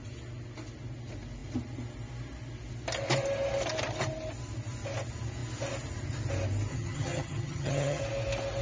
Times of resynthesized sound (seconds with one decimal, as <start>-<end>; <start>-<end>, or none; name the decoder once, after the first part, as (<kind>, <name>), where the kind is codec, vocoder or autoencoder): 6.7-8.0 (vocoder, HiFi-GAN)